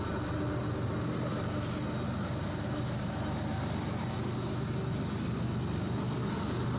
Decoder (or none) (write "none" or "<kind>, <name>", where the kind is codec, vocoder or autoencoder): none